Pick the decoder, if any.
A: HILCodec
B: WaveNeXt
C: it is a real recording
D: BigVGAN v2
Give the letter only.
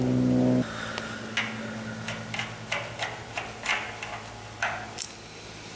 C